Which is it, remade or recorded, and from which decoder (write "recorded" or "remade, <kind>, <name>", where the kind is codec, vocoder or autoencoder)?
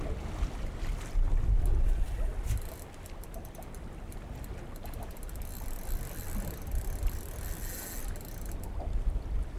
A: recorded